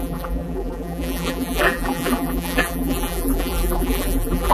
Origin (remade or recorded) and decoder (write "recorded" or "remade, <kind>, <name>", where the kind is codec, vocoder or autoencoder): remade, vocoder, BigVGAN v2